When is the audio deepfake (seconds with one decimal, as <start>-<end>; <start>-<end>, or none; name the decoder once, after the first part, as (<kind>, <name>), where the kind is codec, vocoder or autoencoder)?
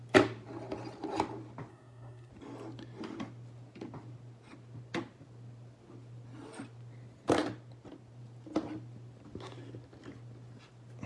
1.7-2.3 (codec, SNAC)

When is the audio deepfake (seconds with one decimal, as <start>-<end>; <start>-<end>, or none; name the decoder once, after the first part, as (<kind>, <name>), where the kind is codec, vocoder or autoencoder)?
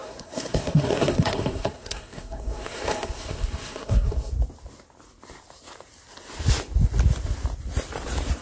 0.0-4.3 (codec, SNAC)